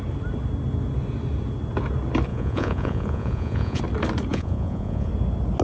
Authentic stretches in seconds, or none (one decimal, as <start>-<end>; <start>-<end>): 0.0-2.3; 3.8-4.3; 5.1-5.6